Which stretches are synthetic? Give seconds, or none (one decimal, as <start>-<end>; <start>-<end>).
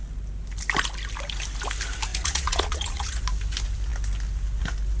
2.1-3.2